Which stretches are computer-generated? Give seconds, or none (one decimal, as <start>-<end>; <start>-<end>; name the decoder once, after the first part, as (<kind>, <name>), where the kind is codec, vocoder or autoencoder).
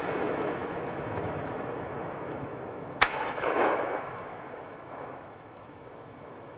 0.0-6.6 (autoencoder, DAC-VAE)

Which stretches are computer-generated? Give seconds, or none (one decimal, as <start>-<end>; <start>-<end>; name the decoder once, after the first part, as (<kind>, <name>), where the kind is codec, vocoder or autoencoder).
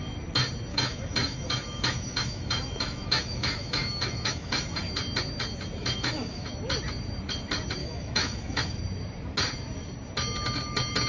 0.7-4.9 (autoencoder, DAC-VAE); 5.8-6.5; 7.8-8.8